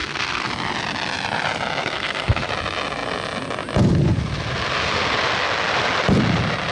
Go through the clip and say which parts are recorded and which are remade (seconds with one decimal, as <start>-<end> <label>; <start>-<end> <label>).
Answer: 0.0-0.5 remade; 0.5-1.8 recorded; 1.8-2.5 remade; 2.5-6.7 recorded